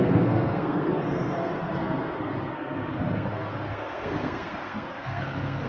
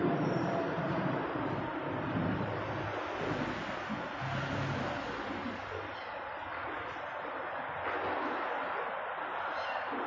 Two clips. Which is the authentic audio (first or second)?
second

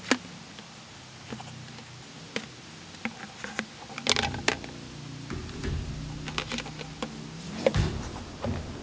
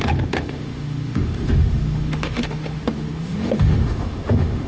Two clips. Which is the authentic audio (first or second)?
first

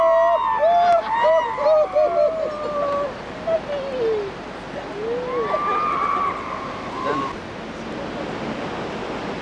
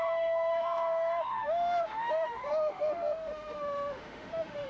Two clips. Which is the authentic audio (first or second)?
first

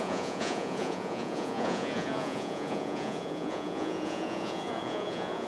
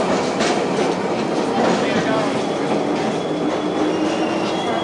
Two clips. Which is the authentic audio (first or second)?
second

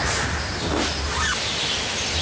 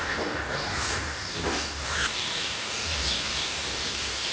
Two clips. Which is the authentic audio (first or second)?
first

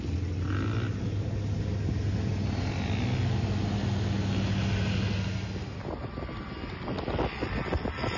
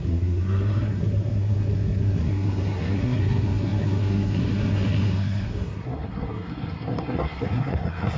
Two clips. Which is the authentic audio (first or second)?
first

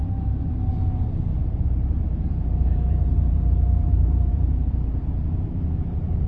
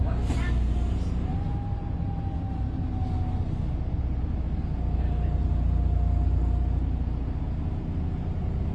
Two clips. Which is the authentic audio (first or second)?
second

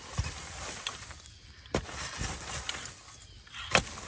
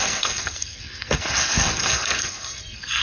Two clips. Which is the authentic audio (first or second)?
first